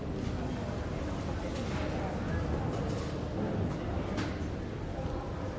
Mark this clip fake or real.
real